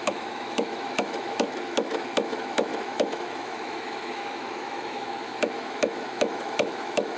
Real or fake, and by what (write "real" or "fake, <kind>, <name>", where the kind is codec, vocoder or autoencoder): fake, autoencoder, DAC-VAE